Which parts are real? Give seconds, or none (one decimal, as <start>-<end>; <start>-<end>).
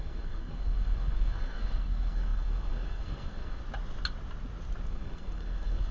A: 3.6-4.9